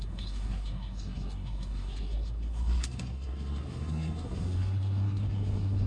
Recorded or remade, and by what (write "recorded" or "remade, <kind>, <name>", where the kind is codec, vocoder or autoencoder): remade, codec, SNAC